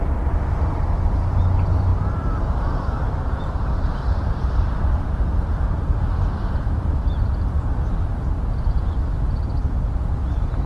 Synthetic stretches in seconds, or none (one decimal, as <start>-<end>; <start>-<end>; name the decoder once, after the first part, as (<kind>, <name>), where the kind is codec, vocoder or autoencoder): 1.9-4.2 (vocoder, BigVGAN v2)